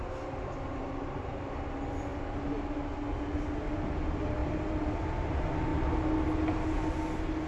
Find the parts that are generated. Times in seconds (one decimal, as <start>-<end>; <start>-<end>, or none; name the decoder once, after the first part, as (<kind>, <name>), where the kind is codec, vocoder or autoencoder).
0.7-1.5 (vocoder, BigVGAN v2); 4.4-5.1